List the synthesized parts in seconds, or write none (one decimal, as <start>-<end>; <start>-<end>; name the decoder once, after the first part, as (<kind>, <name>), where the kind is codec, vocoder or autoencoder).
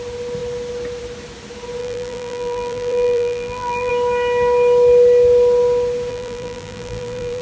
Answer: 1.8-3.9 (vocoder, BigVGAN v2); 6.1-7.4